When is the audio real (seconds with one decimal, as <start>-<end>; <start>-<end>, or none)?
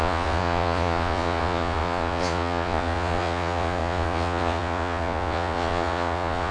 none